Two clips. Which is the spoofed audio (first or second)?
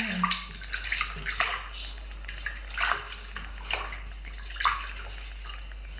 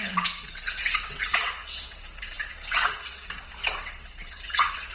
second